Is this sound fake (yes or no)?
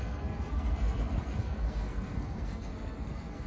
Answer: yes